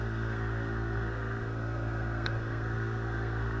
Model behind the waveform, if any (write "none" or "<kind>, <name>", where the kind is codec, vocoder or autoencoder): codec, SNAC